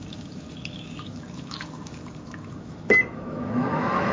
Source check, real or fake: fake